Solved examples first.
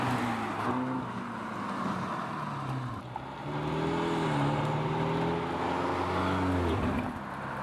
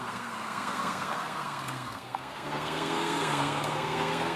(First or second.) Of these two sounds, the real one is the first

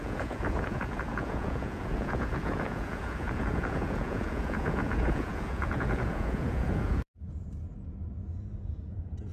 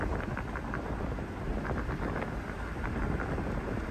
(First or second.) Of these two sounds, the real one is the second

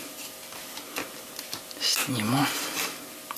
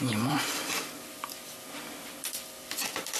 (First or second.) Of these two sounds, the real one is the first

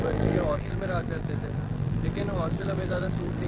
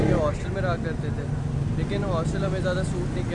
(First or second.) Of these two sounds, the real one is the second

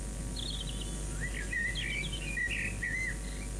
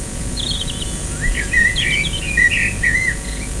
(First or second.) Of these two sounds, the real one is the first